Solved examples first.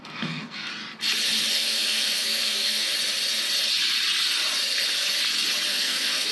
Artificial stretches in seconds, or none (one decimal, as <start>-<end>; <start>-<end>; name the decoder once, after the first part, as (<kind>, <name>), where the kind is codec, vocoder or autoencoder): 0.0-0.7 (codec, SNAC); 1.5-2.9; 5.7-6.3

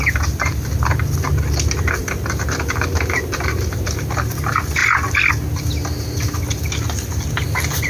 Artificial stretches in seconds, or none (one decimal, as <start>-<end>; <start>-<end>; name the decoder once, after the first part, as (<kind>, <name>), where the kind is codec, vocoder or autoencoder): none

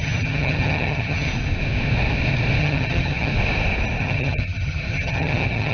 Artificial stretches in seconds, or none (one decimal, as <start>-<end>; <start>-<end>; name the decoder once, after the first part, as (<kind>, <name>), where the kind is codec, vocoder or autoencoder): 0.0-1.3 (vocoder, HiFi-GAN); 2.6-3.3; 4.0-5.7

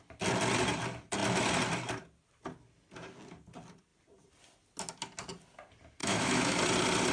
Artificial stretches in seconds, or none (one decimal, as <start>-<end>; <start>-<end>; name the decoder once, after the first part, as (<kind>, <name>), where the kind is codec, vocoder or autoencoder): 6.0-6.6 (autoencoder, DAC-VAE)

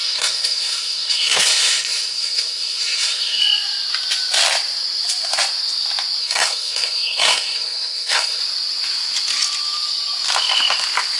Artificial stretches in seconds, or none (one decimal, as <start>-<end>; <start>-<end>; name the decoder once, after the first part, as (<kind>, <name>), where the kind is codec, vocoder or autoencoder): 0.0-3.4 (codec, SNAC); 6.2-8.4

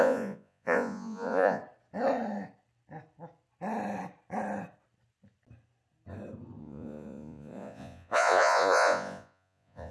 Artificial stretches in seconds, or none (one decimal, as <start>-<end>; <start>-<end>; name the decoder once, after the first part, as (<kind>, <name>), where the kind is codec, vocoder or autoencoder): 0.0-1.6 (vocoder, Vocos); 6.6-9.9

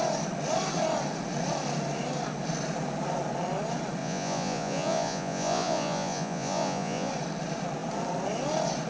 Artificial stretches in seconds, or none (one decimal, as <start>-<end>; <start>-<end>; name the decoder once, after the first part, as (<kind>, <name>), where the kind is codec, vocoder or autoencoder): 4.0-7.1 (vocoder, Vocos)